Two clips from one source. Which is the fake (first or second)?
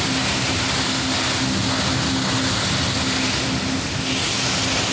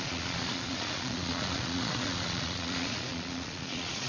second